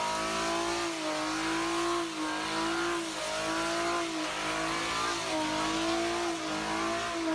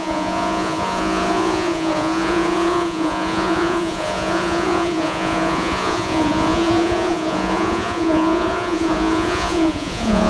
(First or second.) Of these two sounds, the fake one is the second